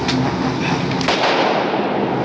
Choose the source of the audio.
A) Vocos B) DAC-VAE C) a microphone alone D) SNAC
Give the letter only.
C